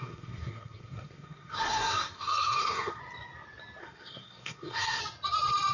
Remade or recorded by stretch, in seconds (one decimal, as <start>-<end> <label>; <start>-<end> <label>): 0.0-3.0 remade; 3.0-3.8 recorded; 3.8-5.0 remade; 5.0-5.7 recorded